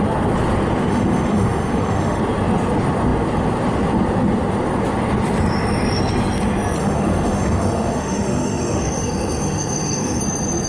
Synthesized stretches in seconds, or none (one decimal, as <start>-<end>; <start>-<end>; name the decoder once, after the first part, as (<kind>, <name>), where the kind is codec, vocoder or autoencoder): 0.9-2.2 (autoencoder, DAC-VAE); 6.8-10.2